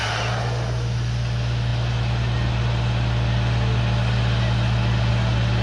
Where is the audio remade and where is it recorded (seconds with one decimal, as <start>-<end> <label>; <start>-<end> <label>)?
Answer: 0.0-5.6 recorded